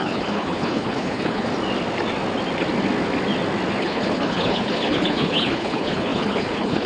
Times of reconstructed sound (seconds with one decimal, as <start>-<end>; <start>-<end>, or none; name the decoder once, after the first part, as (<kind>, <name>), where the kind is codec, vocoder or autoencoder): 0.0-1.5 (codec, HILCodec); 3.8-6.9